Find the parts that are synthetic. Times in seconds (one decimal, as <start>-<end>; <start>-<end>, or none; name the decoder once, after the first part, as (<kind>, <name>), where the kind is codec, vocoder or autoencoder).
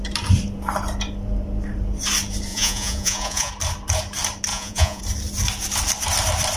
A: 2.5-3.5 (vocoder, Vocos); 4.5-5.0